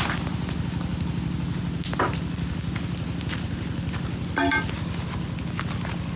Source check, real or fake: real